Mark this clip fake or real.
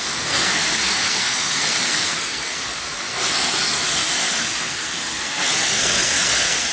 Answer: fake